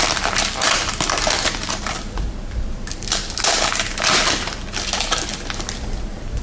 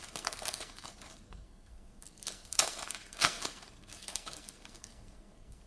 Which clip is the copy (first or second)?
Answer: second